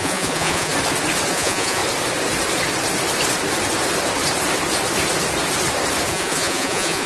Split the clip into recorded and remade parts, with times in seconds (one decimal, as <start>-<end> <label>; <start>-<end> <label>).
0.0-0.7 remade; 0.7-1.3 recorded; 1.3-1.8 remade; 1.8-6.1 recorded; 6.1-7.1 remade